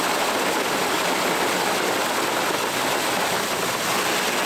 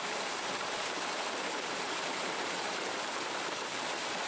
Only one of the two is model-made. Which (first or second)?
second